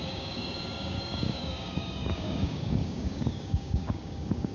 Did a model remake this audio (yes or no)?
yes